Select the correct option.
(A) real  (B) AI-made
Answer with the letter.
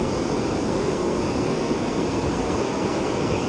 B